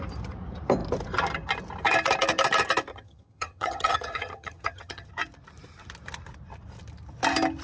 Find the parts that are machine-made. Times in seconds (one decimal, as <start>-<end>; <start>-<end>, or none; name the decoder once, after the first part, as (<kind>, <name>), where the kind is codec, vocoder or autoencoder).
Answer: 2.9-5.1 (vocoder, HiFi-GAN)